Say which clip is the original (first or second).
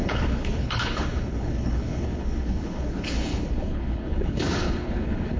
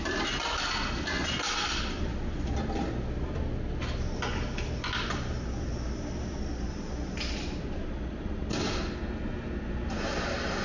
second